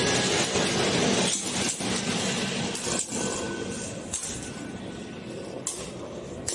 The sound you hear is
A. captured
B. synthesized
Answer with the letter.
A